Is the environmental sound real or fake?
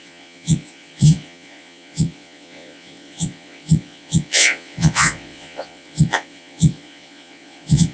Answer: fake